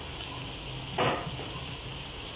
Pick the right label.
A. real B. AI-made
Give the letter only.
A